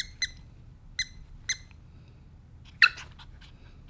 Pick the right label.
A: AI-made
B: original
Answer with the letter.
B